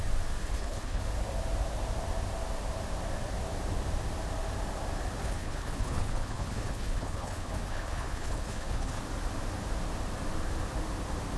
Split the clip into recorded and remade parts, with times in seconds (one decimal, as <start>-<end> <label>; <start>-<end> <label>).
0.0-0.4 recorded; 0.4-1.0 remade; 1.0-5.2 recorded; 5.2-9.0 remade; 9.0-11.4 recorded